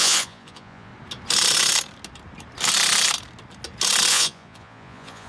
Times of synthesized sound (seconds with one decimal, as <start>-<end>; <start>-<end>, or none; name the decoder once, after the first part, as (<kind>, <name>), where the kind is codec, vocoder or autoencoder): 0.0-0.9 (vocoder, Vocos); 4.1-5.3